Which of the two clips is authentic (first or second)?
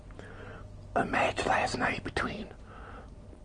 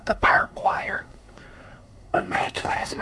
first